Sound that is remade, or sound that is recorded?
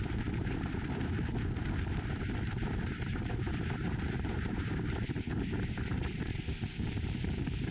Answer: remade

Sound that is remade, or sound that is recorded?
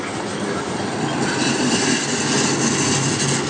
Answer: recorded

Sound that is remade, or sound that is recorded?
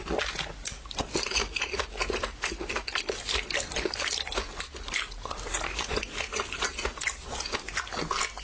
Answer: recorded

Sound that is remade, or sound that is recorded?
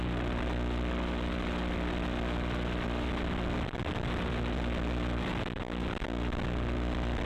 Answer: recorded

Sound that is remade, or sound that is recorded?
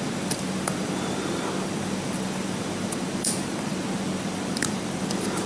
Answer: remade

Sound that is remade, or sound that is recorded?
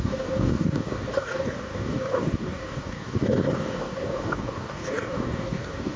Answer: remade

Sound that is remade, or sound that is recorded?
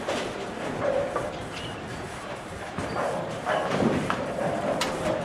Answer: remade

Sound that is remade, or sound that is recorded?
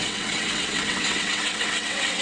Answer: remade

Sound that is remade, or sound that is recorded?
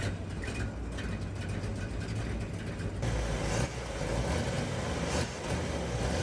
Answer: recorded